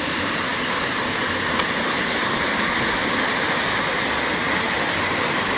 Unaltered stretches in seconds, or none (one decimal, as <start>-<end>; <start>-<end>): 0.0-5.6